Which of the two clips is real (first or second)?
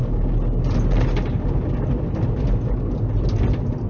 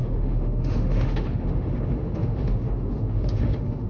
first